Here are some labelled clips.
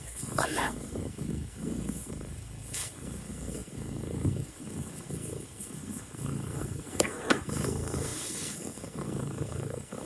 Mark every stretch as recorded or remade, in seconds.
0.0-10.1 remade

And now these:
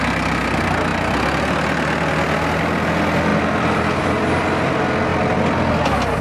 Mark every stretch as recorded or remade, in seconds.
0.0-6.2 recorded

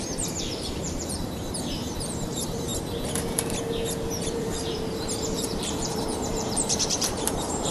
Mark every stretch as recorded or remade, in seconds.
0.0-2.7 remade; 2.7-4.2 recorded; 4.2-7.7 remade

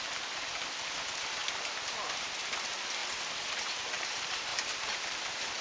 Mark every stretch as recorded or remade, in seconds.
0.0-4.5 recorded; 4.5-5.0 remade; 5.0-5.6 recorded

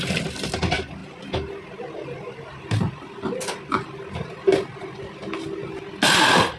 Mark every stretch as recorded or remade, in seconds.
0.0-6.6 recorded

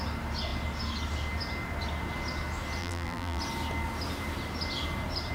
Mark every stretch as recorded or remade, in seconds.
0.0-2.8 recorded; 2.8-3.4 remade; 3.4-5.3 recorded

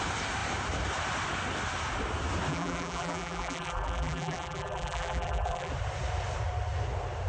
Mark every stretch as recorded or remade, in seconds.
0.0-2.5 recorded; 2.5-5.7 remade; 5.7-7.3 recorded

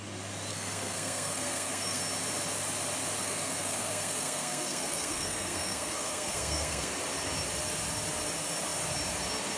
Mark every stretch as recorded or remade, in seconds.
0.0-0.5 recorded; 0.5-2.0 remade; 2.0-3.2 recorded; 3.2-6.9 remade; 6.9-9.6 recorded